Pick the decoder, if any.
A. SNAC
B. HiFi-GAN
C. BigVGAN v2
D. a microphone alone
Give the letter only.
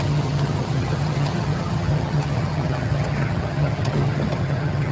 B